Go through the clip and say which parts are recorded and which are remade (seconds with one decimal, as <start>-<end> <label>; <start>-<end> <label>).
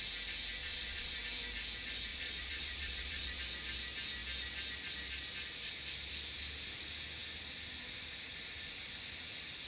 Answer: 0.0-0.6 recorded; 0.6-1.2 remade; 1.2-2.1 recorded; 2.1-3.4 remade; 3.4-9.7 recorded